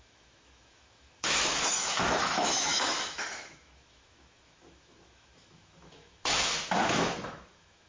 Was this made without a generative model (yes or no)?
no